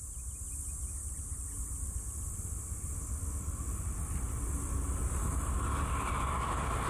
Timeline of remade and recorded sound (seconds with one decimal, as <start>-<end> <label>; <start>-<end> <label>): 0.0-1.0 recorded; 1.0-5.1 remade; 5.1-6.9 recorded